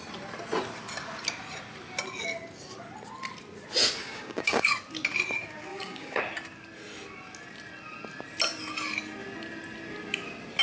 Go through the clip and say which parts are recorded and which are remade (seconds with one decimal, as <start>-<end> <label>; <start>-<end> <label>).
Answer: 0.0-4.0 recorded; 4.0-4.7 remade; 4.7-5.7 recorded; 5.7-6.2 remade; 6.2-10.6 recorded